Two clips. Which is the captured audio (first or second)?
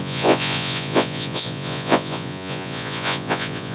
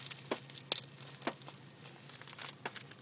second